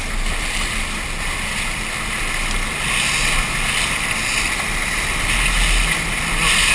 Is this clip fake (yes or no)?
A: no